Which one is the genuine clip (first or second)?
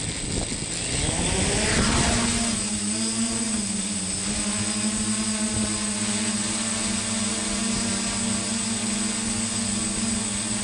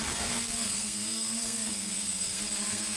first